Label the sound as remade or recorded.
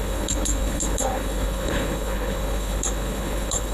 remade